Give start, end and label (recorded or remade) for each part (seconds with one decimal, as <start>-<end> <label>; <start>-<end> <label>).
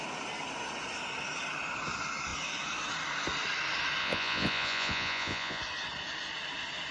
0.0-4.0 recorded; 4.0-5.6 remade; 5.6-6.9 recorded